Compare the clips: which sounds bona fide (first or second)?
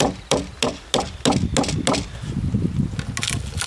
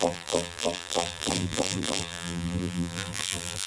first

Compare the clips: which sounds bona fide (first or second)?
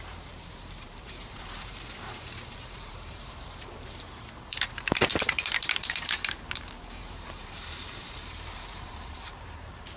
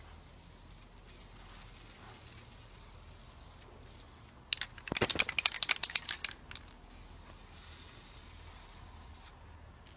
second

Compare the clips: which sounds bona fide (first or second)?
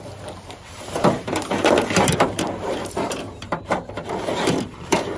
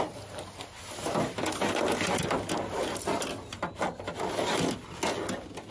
second